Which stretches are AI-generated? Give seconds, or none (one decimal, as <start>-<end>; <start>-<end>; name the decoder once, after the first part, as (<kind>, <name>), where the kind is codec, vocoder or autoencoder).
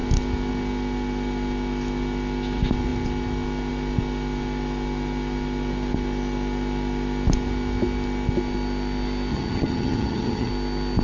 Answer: 9.3-10.5 (vocoder, HiFi-GAN)